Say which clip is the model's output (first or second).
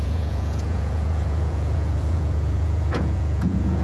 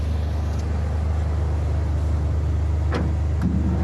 first